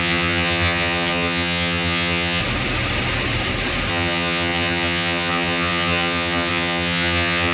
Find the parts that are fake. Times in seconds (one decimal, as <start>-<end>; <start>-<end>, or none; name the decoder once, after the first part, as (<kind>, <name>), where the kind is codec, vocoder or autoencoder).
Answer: 0.0-2.4 (vocoder, HiFi-GAN); 3.9-7.5

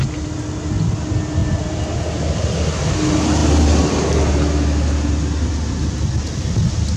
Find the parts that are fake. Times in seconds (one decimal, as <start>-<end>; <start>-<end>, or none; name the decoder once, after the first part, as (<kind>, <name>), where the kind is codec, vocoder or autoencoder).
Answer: none

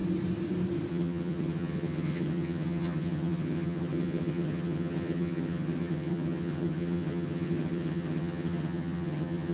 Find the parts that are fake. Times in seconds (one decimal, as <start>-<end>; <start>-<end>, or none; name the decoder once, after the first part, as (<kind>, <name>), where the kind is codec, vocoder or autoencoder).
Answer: 0.9-9.5 (vocoder, HiFi-GAN)

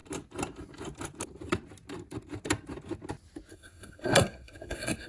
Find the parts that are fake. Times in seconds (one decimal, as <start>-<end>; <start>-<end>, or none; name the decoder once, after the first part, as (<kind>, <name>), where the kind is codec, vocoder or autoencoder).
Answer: 3.5-5.1 (codec, SNAC)

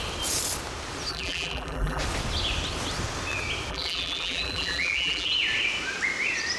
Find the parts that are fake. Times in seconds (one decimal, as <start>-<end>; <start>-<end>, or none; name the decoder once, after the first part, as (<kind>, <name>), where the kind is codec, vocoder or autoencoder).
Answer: 1.1-2.0 (vocoder, BigVGAN v2); 3.7-5.3

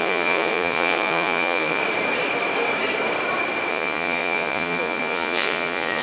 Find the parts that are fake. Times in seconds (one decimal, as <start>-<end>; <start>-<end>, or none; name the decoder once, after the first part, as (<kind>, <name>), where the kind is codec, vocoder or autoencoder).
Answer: 0.0-1.8 (vocoder, Vocos); 3.7-6.0

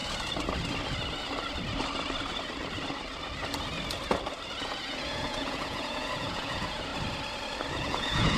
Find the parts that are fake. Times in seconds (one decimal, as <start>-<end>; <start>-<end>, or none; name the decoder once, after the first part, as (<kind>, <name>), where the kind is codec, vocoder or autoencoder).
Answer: 4.6-6.9 (vocoder, Vocos); 7.7-8.4

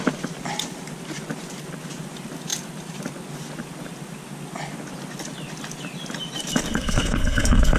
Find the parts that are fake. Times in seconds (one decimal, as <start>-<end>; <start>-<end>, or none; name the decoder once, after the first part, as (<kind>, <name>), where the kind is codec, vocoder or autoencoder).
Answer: 6.7-7.8 (codec, SNAC)